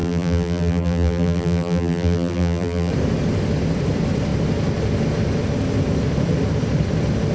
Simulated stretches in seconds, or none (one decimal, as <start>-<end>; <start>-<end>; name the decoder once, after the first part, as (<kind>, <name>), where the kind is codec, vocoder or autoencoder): 0.0-2.9 (vocoder, BigVGAN v2)